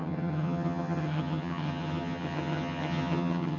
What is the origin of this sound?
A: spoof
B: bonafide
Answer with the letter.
A